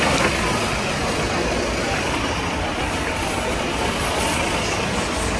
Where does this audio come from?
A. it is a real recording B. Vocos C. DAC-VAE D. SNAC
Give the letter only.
A